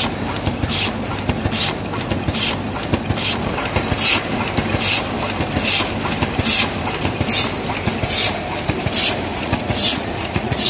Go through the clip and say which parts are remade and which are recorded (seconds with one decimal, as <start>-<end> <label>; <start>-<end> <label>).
0.0-9.3 recorded; 9.3-10.7 remade